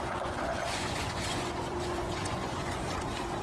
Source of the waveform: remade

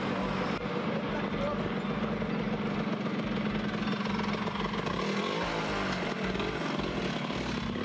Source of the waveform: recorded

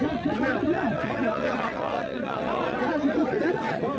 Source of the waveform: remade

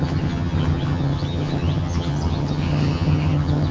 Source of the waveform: remade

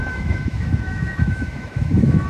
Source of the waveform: remade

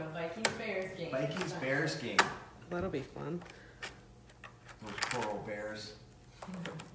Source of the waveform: recorded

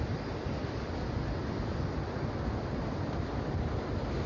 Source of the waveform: recorded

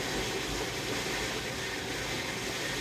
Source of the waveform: recorded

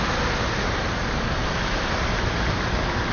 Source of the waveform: remade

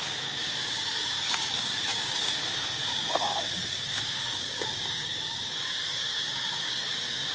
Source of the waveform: remade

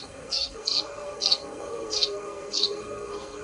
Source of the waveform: remade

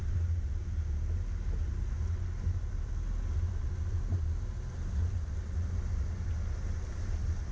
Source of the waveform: recorded